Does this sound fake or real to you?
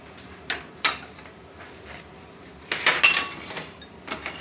real